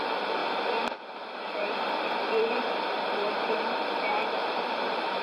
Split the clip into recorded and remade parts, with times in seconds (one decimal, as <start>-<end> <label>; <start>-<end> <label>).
0.0-5.2 remade